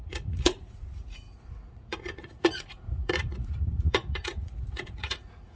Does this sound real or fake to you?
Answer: fake